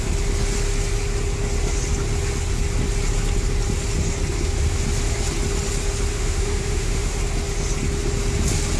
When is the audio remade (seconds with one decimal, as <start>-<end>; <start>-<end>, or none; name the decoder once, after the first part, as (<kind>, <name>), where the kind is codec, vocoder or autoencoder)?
6.1-7.2 (autoencoder, DAC-VAE)